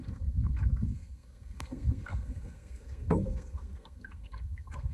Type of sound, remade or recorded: remade